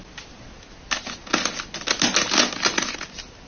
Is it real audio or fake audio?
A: real